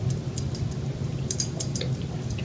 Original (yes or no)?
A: yes